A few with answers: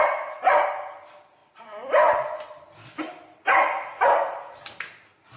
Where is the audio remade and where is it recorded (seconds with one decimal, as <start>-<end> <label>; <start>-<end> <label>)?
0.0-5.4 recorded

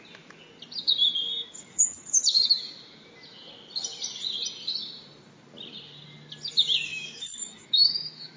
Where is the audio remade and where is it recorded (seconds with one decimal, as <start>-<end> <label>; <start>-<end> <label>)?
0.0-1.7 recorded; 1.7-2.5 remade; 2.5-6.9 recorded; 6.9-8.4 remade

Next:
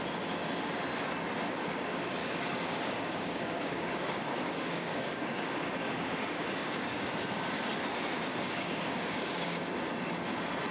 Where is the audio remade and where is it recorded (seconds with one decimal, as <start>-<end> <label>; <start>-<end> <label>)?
0.0-2.2 recorded; 2.2-7.1 remade; 7.1-8.3 recorded; 8.3-9.7 remade; 9.7-10.7 recorded

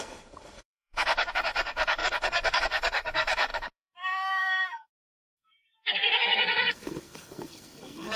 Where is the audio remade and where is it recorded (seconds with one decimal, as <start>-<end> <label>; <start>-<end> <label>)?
0.0-8.2 remade